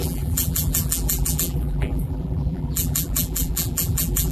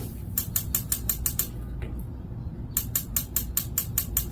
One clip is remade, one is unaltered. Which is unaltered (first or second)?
second